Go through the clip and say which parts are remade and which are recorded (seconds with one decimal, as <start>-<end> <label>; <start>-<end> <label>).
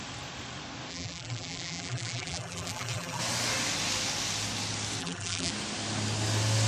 0.0-0.9 recorded; 0.9-3.2 remade; 3.2-5.0 recorded; 5.0-5.5 remade; 5.5-6.7 recorded